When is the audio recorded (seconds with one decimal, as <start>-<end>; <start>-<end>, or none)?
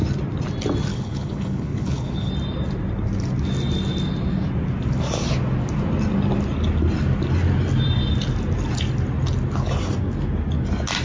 0.0-0.9; 2.3-11.0